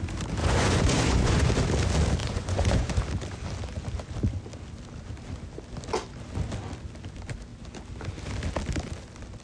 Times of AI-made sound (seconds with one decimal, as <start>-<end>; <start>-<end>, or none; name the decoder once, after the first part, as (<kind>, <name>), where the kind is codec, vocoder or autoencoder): 0.4-1.5 (vocoder, Vocos); 2.2-2.9